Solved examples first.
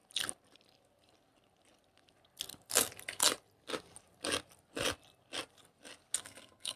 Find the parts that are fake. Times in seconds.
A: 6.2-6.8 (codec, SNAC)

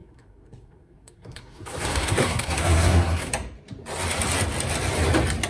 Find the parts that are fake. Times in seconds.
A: 0.0-3.3 (codec, SNAC)